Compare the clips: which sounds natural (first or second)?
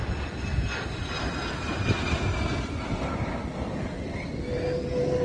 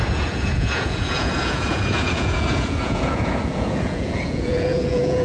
first